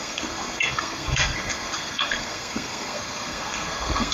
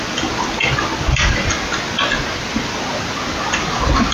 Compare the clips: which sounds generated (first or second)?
first